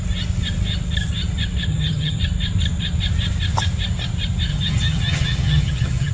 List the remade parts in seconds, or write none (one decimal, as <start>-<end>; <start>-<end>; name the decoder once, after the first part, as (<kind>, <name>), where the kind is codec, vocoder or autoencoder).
1.7-2.2 (vocoder, HiFi-GAN); 4.5-6.1

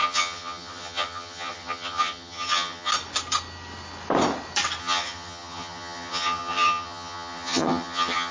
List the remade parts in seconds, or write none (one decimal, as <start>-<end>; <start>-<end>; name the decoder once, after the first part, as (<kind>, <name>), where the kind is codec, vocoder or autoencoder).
0.0-2.9 (vocoder, HiFi-GAN); 4.8-8.3